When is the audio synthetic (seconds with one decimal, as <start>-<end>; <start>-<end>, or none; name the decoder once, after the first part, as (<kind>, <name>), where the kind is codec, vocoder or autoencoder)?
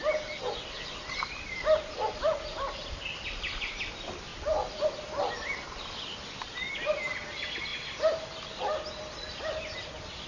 0.6-3.9 (vocoder, BigVGAN v2); 4.3-4.8